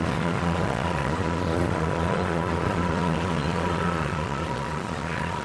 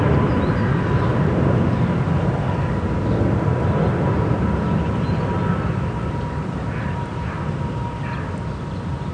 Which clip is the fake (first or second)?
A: first